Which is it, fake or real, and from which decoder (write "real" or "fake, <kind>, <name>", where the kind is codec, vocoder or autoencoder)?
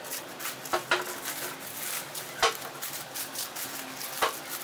real